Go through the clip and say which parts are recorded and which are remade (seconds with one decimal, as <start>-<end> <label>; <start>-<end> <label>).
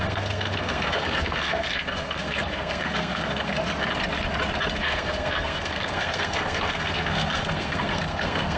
0.0-3.5 remade; 3.5-4.8 recorded; 4.8-8.6 remade